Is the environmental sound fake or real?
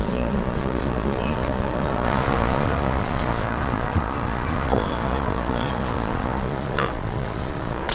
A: fake